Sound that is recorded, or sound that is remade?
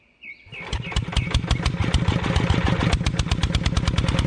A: recorded